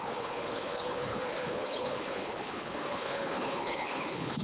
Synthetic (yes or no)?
yes